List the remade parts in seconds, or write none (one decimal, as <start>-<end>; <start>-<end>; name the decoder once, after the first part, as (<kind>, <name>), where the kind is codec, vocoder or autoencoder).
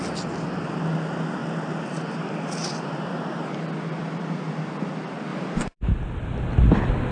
none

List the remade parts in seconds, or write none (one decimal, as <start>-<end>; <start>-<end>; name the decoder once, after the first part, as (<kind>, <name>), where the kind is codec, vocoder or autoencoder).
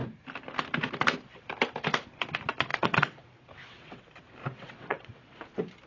2.7-4.0 (vocoder, WaveNeXt); 4.4-5.4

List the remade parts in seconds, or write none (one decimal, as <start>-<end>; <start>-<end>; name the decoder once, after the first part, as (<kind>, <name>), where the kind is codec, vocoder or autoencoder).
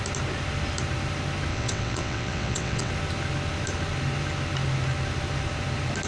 1.5-2.9 (vocoder, WaveNeXt)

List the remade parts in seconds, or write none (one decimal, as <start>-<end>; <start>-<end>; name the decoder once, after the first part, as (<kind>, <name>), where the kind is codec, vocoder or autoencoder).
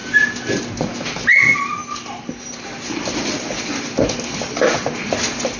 none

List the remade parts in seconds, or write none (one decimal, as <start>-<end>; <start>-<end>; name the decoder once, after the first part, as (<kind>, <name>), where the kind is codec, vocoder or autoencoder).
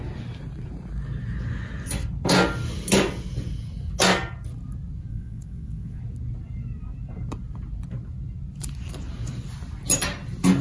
5.1-6.0 (vocoder, WaveNeXt)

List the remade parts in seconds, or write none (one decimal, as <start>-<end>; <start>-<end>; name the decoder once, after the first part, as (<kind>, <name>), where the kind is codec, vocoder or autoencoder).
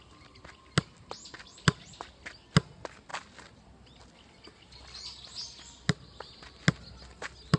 none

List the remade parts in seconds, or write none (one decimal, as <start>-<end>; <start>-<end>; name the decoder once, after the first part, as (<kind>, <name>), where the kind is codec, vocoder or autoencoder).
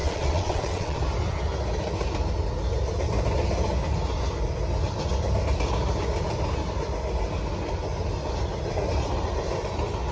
0.0-1.0 (vocoder, WaveNeXt)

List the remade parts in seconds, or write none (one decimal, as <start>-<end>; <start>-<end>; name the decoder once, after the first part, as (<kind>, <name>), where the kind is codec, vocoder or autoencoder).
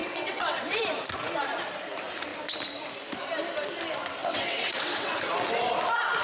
0.0-0.8 (vocoder, WaveNeXt); 4.2-5.1